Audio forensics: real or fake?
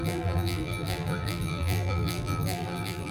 fake